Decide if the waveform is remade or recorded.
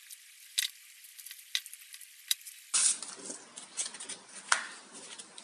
recorded